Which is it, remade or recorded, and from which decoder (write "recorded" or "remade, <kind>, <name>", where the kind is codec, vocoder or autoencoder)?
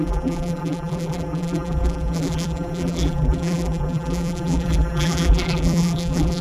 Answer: remade, vocoder, BigVGAN v2